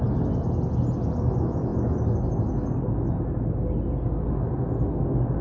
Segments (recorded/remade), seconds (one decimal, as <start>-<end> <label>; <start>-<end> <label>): 0.0-5.4 recorded